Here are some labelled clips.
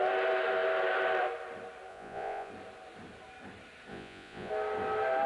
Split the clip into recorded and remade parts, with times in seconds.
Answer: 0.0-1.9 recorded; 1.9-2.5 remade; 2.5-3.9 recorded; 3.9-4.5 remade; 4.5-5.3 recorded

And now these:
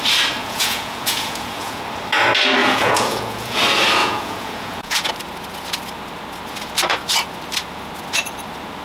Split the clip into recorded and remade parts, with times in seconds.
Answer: 0.0-0.4 recorded; 0.4-1.8 remade; 1.8-2.6 recorded; 2.6-3.6 remade; 3.6-4.0 recorded; 4.0-5.1 remade; 5.1-8.8 recorded

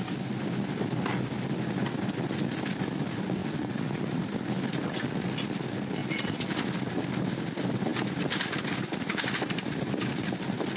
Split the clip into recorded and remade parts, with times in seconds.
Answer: 0.0-3.4 recorded; 3.4-4.2 remade; 4.2-6.0 recorded; 6.0-6.5 remade; 6.5-10.8 recorded

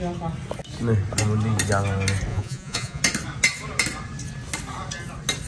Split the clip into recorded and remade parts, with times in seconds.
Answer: 0.0-2.3 recorded; 2.3-3.0 remade; 3.0-5.5 recorded

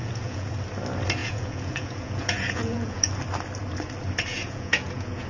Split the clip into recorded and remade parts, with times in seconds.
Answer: 0.0-0.5 remade; 0.5-1.2 recorded; 1.2-3.1 remade; 3.1-4.3 recorded; 4.3-5.3 remade

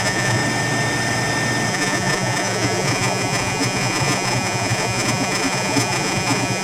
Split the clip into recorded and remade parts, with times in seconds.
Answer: 0.0-0.4 remade; 0.4-1.7 recorded; 1.7-6.6 remade